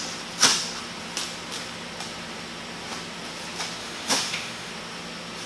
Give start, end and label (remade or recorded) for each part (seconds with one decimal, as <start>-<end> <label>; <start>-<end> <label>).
0.0-3.8 recorded; 3.8-4.7 remade; 4.7-5.5 recorded